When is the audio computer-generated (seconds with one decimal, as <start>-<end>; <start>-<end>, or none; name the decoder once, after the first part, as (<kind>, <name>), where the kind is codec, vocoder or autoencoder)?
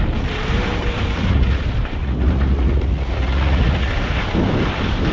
1.1-1.6 (vocoder, Vocos); 2.0-3.9